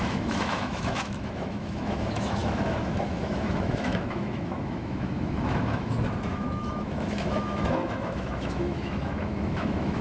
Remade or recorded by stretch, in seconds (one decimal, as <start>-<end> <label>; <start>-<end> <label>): 0.0-10.0 remade